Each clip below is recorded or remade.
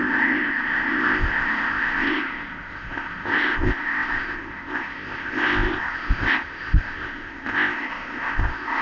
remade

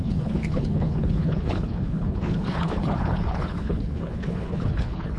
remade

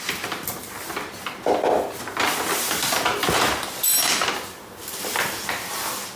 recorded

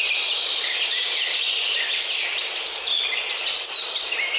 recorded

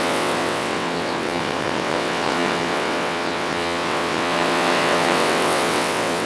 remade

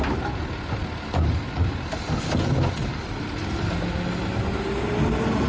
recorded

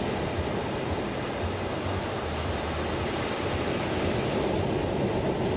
recorded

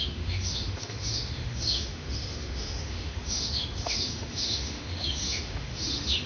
remade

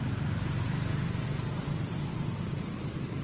recorded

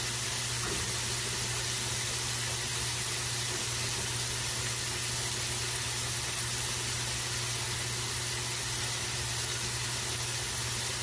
recorded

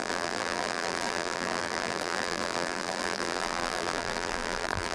remade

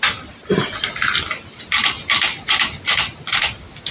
recorded